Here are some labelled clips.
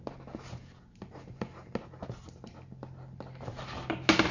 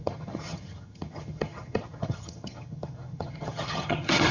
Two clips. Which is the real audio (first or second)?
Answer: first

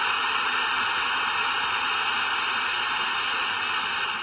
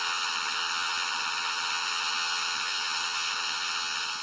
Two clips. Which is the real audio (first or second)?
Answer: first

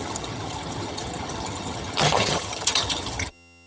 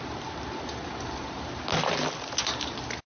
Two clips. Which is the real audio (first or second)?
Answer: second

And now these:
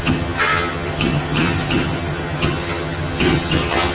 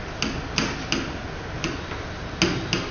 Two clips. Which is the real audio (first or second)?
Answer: second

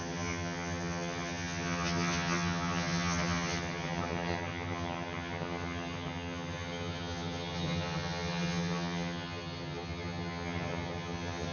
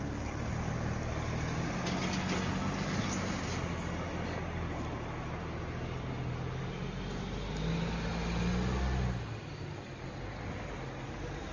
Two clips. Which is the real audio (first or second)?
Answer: second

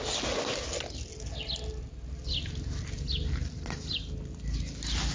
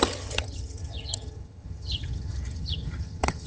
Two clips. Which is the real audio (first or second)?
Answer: first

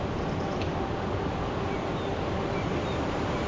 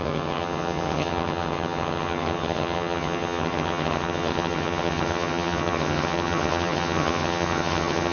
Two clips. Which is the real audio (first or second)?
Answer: first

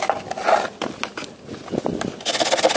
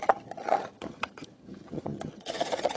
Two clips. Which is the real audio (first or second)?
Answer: first